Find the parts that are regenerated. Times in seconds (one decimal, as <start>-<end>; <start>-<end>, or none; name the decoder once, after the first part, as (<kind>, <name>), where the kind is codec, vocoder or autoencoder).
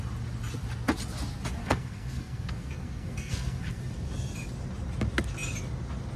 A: 1.6-3.8 (codec, SNAC)